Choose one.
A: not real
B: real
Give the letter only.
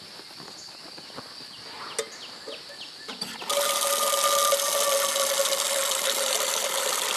B